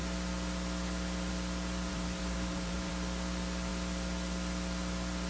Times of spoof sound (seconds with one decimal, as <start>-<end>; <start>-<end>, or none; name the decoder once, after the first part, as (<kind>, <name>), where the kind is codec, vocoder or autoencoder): 1.9-2.9 (vocoder, BigVGAN v2)